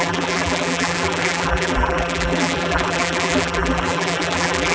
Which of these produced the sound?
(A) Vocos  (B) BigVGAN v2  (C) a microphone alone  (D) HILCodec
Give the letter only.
B